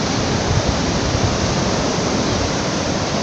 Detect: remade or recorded remade